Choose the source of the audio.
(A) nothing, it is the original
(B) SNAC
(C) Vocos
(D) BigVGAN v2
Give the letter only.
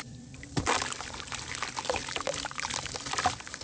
D